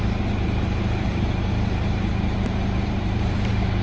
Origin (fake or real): fake